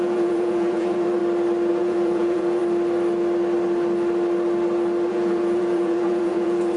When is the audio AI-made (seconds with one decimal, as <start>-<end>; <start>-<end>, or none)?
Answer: 0.0-1.2; 1.7-2.6; 5.1-6.8